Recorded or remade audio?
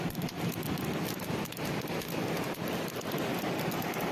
recorded